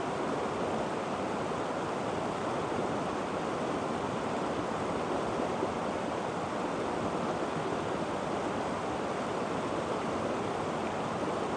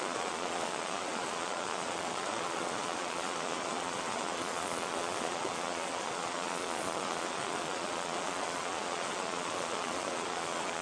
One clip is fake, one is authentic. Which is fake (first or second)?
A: second